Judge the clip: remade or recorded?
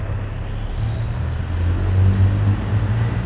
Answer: recorded